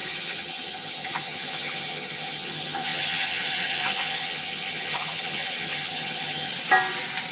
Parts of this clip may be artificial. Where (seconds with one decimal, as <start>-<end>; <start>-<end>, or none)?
0.0-6.5